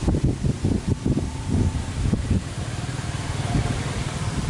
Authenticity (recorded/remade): remade